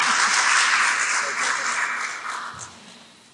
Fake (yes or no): no